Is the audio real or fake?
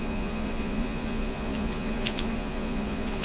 fake